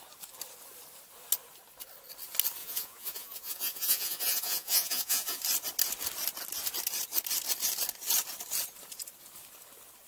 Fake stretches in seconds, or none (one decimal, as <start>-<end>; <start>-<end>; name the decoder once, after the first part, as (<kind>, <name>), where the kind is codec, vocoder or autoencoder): 2.6-5.4 (vocoder, Vocos)